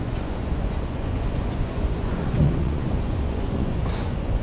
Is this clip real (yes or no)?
no